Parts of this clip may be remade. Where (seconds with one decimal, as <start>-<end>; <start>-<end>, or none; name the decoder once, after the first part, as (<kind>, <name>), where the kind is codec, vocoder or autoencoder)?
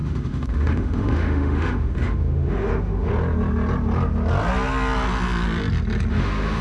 0.0-3.1 (autoencoder, DAC-VAE); 6.1-6.6